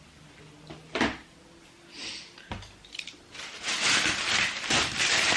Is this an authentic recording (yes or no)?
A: no